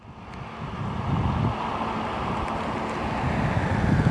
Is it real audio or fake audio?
real